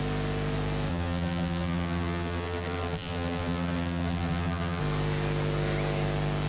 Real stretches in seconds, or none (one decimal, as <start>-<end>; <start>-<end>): 0.0-0.9; 4.8-6.5